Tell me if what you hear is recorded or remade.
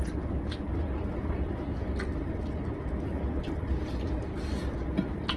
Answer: recorded